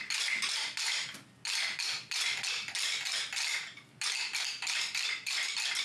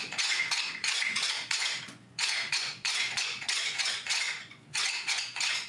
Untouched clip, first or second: first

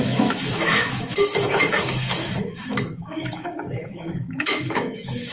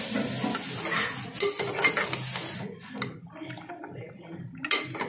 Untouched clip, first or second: second